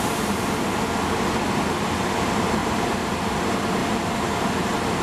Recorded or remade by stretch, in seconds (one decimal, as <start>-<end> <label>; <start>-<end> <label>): 0.0-2.6 recorded; 2.6-3.3 remade; 3.3-3.8 recorded; 3.8-5.0 remade